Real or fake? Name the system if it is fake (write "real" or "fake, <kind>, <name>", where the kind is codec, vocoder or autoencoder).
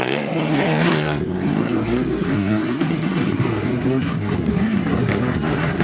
fake, codec, SNAC